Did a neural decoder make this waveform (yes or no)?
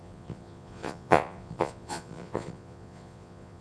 yes